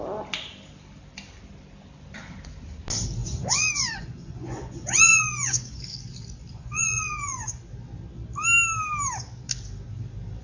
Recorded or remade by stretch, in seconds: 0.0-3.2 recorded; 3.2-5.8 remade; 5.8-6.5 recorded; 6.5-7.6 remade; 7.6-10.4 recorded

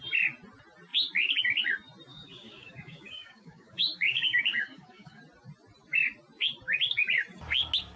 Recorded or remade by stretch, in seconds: 0.0-2.1 recorded; 2.1-5.2 remade; 5.2-8.0 recorded

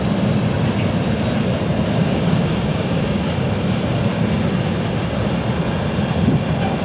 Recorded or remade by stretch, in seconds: 0.0-2.0 recorded; 2.0-3.2 remade; 3.2-6.8 recorded